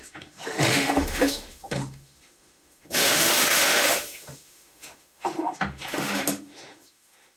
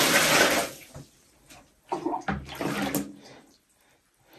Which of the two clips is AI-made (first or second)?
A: first